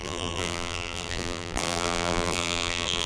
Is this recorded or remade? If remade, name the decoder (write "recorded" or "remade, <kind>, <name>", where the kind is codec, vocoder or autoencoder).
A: remade, vocoder, BigVGAN v2